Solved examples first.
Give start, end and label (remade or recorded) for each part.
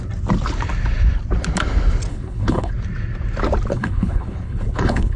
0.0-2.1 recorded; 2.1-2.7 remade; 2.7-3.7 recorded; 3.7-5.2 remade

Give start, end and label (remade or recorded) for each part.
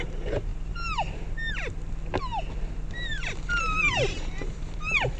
0.0-0.5 remade; 0.5-3.6 recorded; 3.6-5.2 remade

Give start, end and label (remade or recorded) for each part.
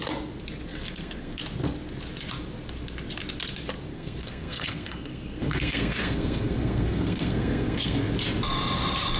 0.0-0.7 recorded; 0.7-1.4 remade; 1.4-3.9 recorded; 3.9-8.1 remade; 8.1-9.2 recorded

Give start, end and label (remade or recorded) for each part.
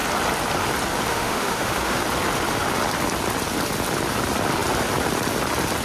0.0-1.1 recorded; 1.1-2.0 remade; 2.0-5.8 recorded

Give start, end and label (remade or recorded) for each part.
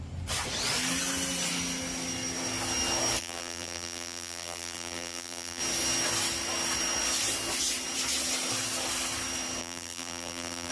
0.0-3.2 recorded; 3.2-5.6 remade; 5.6-9.6 recorded; 9.6-10.7 remade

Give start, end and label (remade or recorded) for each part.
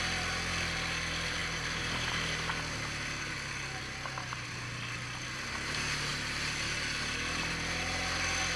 0.0-8.6 recorded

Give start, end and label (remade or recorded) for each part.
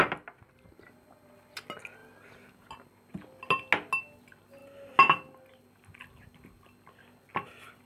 0.0-7.9 recorded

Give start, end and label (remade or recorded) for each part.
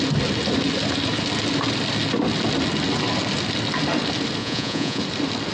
0.0-4.4 recorded; 4.4-5.0 remade; 5.0-5.5 recorded